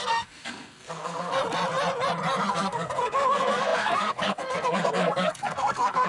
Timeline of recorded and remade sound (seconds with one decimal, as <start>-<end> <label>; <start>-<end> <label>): 0.0-1.4 remade; 1.4-2.5 recorded; 2.5-6.1 remade